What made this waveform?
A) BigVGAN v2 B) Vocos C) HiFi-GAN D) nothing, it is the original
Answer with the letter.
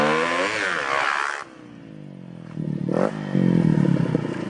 D